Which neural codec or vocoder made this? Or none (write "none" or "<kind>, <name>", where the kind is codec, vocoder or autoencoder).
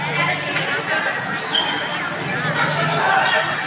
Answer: none